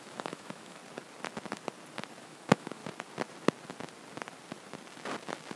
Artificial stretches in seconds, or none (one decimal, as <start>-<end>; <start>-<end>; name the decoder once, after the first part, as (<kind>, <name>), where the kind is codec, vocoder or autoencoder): 0.0-0.8 (autoencoder, DAC-VAE); 2.2-2.8